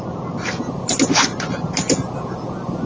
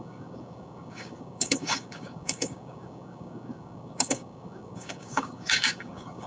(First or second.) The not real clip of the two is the second